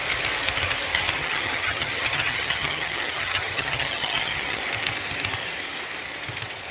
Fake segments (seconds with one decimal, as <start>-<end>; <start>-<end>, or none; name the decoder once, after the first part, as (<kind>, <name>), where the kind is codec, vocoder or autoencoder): 1.2-4.6 (vocoder, HiFi-GAN)